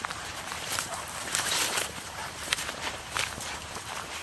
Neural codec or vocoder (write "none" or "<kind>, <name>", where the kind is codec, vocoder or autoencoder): vocoder, BigVGAN v2